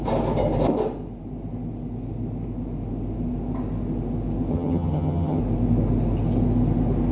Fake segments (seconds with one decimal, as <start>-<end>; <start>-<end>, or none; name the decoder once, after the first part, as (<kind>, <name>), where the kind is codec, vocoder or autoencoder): 4.5-5.4 (vocoder, HiFi-GAN)